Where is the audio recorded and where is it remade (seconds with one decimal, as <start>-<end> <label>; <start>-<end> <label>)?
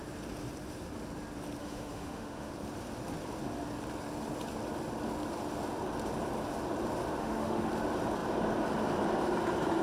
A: 0.0-1.6 recorded; 1.6-2.5 remade; 2.5-7.2 recorded; 7.2-7.7 remade; 7.7-9.8 recorded